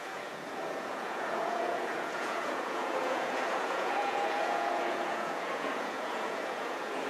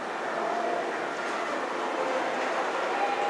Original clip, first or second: second